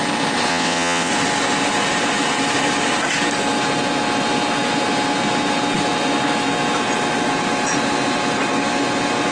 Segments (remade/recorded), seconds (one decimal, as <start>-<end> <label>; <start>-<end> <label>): 0.0-0.5 recorded; 0.5-1.1 remade; 1.1-9.3 recorded